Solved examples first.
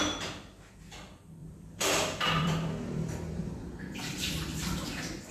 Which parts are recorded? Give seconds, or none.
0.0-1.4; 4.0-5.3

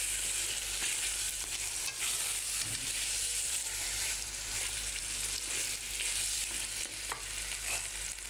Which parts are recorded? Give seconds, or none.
0.0-1.3; 1.8-3.3; 5.0-8.3

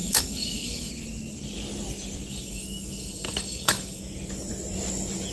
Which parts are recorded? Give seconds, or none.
0.9-2.3; 4.0-5.3

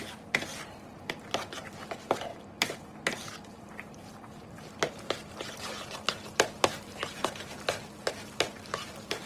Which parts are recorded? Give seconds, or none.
none